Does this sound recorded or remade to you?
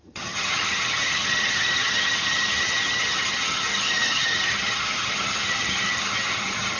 remade